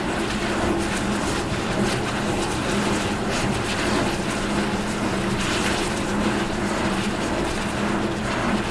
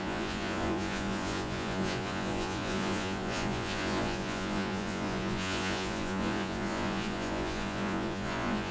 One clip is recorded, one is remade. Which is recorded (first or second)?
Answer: first